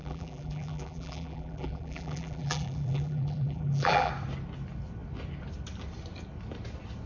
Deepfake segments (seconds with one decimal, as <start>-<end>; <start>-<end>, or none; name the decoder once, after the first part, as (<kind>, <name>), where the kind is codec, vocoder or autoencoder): 0.0-4.1 (vocoder, BigVGAN v2)